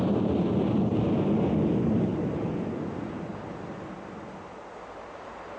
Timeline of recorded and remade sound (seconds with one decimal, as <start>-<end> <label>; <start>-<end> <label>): 0.0-5.6 recorded